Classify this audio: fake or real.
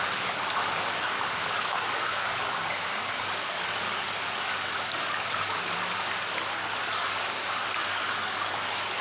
fake